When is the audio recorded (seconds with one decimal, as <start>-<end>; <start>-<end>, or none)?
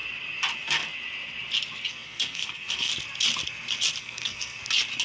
0.0-1.9; 2.9-4.0; 4.6-5.0